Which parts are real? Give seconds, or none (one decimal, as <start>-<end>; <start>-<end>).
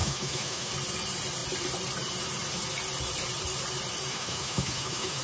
0.7-4.1